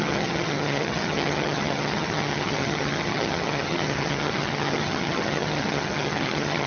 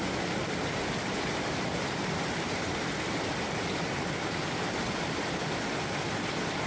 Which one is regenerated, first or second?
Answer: first